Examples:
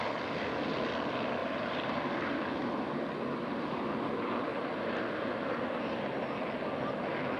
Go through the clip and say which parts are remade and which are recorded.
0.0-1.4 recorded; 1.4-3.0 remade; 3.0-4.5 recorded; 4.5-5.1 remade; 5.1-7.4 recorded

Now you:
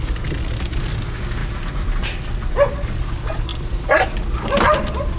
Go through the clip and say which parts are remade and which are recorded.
0.0-1.4 recorded; 1.4-2.2 remade; 2.2-5.2 recorded